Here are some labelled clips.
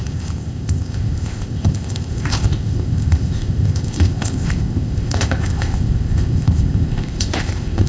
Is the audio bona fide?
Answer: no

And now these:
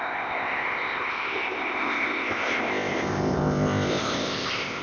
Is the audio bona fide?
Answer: no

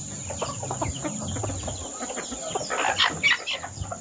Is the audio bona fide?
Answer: yes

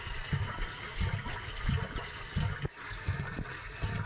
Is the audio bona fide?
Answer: yes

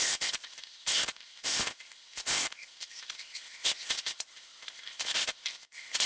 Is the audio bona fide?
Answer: no